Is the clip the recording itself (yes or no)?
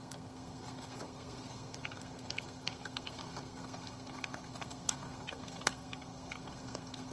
no